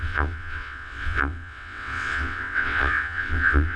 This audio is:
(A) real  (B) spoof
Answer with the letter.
B